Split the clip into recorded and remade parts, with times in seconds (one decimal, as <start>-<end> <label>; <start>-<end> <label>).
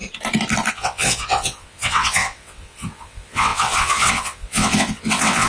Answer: 0.0-0.7 recorded; 0.7-5.5 remade